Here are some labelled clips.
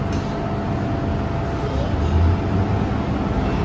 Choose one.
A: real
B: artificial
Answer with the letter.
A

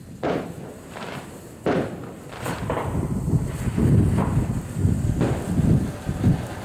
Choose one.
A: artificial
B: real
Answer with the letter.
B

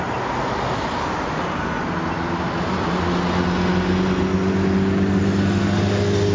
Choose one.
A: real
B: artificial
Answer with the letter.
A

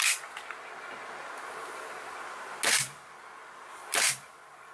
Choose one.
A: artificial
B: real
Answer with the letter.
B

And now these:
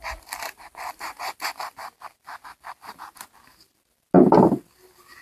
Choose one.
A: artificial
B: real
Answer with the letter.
B